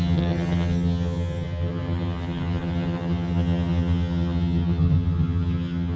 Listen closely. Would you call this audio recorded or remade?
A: remade